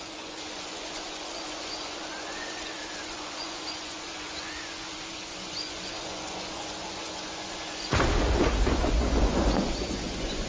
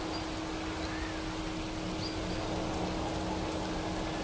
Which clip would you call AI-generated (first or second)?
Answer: first